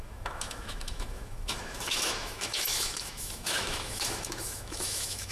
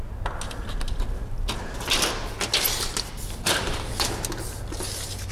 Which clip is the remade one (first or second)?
first